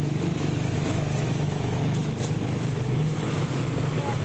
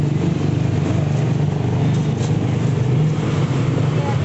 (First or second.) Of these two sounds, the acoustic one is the second